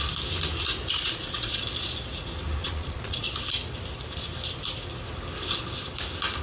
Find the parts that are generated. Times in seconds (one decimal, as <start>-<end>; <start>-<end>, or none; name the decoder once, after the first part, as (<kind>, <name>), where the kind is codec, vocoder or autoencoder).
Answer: 0.9-1.6 (vocoder, Vocos); 2.6-3.3